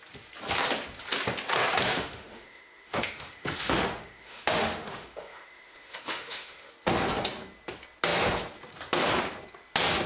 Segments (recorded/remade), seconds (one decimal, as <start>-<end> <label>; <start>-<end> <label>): 0.0-1.9 recorded; 1.9-6.7 remade; 6.7-10.1 recorded